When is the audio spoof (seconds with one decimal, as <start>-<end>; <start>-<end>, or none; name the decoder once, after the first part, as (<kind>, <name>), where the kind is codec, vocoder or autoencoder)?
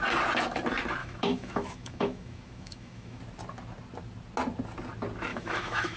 1.0-3.2 (autoencoder, DAC-VAE); 5.3-6.0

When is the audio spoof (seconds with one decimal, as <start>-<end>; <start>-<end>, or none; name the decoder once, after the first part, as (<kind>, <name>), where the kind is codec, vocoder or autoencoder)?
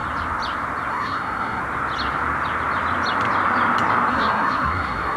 0.9-1.6 (codec, SNAC); 4.1-5.2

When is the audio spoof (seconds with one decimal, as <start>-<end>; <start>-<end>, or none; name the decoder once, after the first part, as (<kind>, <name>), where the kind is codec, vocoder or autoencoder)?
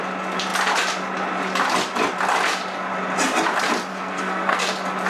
3.9-4.6 (codec, SNAC)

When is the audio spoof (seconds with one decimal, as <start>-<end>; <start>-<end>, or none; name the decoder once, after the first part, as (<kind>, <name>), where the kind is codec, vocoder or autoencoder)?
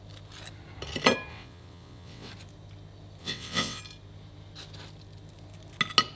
1.3-2.3 (vocoder, WaveNeXt); 3.2-3.8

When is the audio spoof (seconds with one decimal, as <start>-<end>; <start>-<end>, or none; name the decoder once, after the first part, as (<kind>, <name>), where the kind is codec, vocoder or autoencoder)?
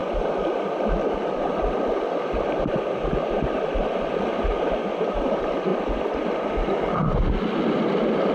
0.0-3.8 (vocoder, BigVGAN v2); 5.7-6.5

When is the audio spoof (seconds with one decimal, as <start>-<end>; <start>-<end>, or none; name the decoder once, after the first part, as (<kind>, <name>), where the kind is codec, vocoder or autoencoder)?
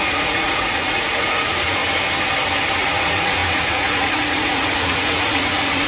0.0-1.8 (vocoder, Vocos); 2.8-5.9